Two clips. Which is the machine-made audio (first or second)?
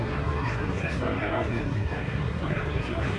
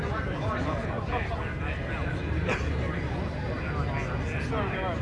first